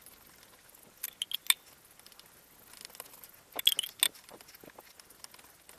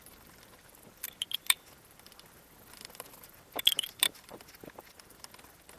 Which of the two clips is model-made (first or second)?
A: second